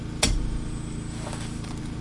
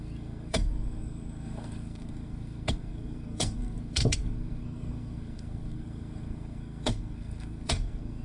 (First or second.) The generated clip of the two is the second